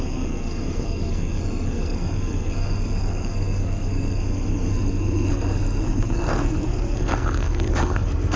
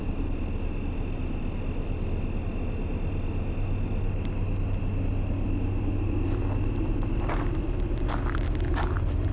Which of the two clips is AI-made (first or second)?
first